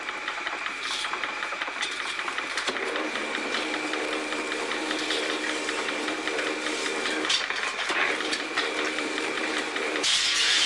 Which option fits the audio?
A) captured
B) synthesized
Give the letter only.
B